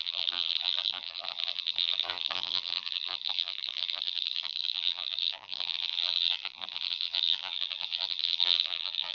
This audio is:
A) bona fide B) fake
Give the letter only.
B